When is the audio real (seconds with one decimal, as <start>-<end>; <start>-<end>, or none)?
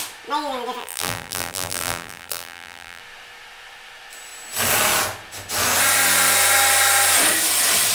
0.0-0.8; 3.0-7.9